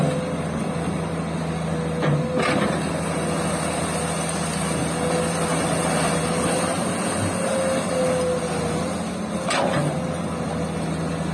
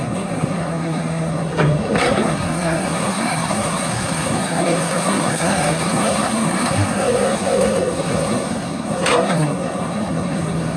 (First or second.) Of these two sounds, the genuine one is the first